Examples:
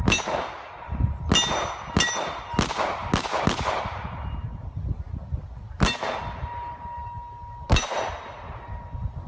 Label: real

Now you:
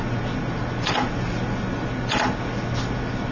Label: real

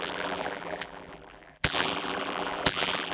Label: fake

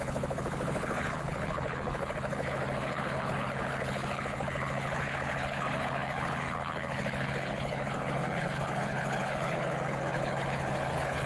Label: fake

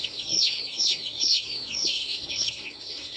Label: fake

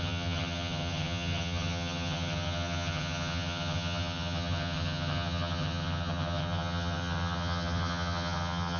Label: fake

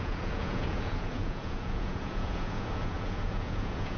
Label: fake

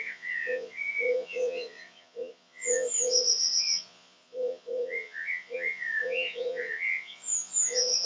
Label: fake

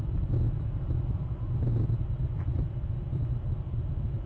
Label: fake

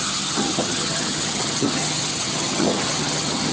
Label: fake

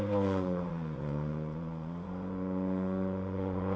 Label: fake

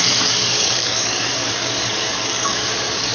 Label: fake